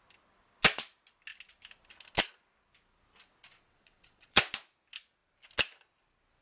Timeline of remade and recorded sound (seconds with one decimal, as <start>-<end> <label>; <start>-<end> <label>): 0.0-3.4 recorded; 3.4-4.4 remade; 4.4-6.4 recorded